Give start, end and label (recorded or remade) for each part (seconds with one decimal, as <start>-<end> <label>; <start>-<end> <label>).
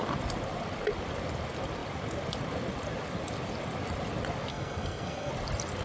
0.0-4.5 recorded; 4.5-5.3 remade; 5.3-5.8 recorded